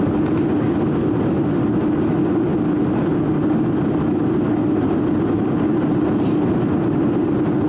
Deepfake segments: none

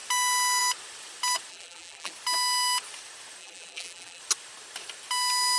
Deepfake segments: 1.5-2.1 (vocoder, BigVGAN v2); 3.4-4.2

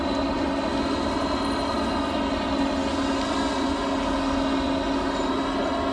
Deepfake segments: none

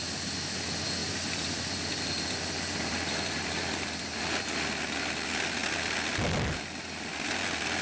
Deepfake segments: 1.0-4.2 (vocoder, BigVGAN v2)

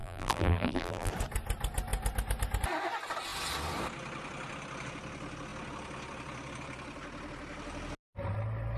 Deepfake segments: 0.0-1.1 (vocoder, BigVGAN v2)

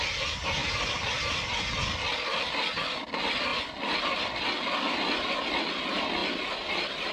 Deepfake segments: 0.6-1.6 (vocoder, BigVGAN v2)

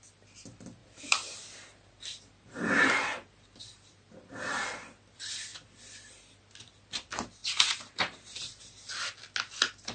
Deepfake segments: 0.8-4.6 (vocoder, BigVGAN v2); 7.4-8.6

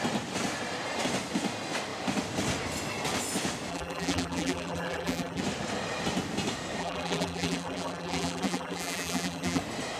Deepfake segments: 3.7-5.4 (vocoder, BigVGAN v2); 6.8-9.6